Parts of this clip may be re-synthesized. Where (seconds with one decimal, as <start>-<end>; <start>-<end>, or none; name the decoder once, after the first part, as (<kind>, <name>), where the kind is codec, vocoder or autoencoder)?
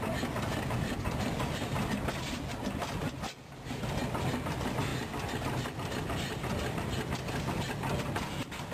4.9-5.9 (vocoder, BigVGAN v2)